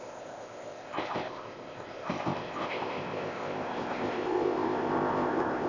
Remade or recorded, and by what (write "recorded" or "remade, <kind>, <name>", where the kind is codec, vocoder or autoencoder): remade, codec, ZipCodec